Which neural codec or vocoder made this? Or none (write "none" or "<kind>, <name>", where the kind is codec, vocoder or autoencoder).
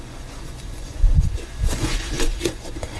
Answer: vocoder, Vocos